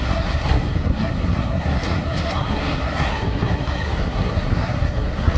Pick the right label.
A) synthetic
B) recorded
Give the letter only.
A